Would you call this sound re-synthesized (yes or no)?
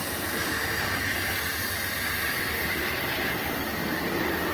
no